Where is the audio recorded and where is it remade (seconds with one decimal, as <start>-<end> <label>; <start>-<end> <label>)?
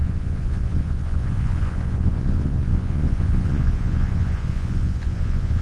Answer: 0.0-5.6 remade